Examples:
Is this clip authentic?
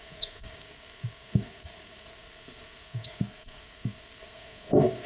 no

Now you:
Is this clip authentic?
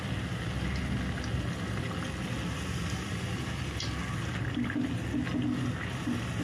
yes